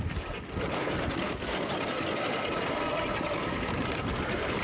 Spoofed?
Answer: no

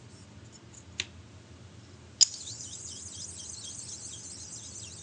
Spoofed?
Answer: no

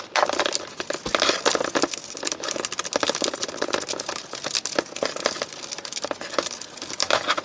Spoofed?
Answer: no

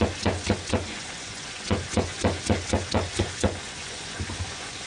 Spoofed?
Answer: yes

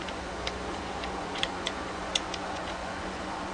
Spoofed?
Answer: yes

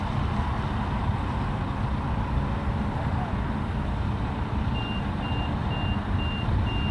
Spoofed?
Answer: no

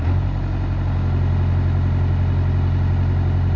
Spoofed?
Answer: no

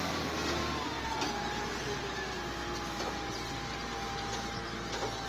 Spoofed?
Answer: no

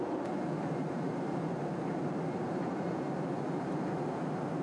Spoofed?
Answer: yes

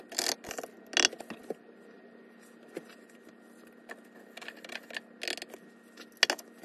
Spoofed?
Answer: no